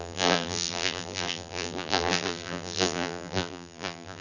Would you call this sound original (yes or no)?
no